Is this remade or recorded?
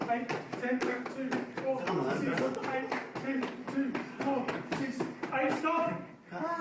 remade